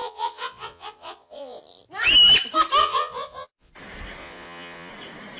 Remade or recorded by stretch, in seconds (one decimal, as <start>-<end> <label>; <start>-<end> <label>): 0.0-1.6 remade; 1.6-2.8 recorded; 2.8-3.7 remade; 3.7-4.2 recorded; 4.2-4.9 remade; 4.9-5.4 recorded